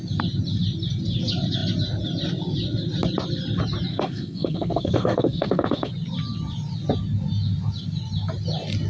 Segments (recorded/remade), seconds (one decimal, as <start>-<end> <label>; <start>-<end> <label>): 0.0-3.9 recorded; 3.9-5.9 remade; 5.9-8.9 recorded